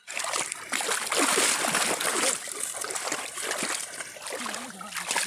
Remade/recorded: remade